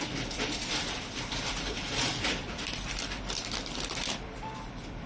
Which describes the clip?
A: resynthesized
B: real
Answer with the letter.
A